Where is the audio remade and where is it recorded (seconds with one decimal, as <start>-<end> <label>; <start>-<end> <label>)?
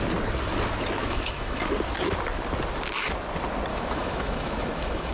0.0-1.0 recorded; 1.0-1.6 remade; 1.6-3.7 recorded; 3.7-5.1 remade